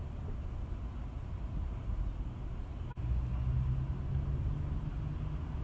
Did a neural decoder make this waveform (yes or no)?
no